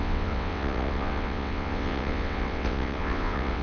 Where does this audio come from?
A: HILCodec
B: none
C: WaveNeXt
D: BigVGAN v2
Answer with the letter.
C